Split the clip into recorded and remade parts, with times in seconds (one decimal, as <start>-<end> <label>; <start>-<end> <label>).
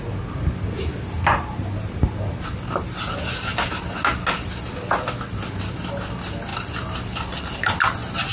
0.0-8.3 recorded